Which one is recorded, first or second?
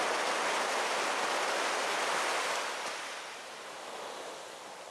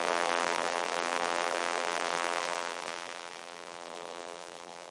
first